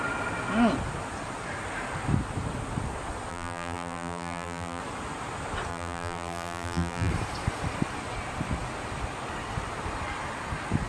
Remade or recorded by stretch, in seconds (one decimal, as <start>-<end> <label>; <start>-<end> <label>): 0.0-3.3 recorded; 3.3-4.8 remade; 4.8-5.7 recorded; 5.7-7.1 remade; 7.1-10.9 recorded